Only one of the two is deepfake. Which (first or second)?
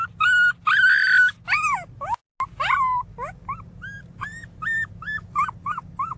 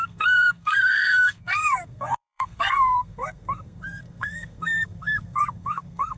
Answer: second